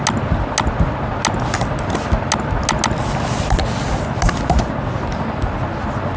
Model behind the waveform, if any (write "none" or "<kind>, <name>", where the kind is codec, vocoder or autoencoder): none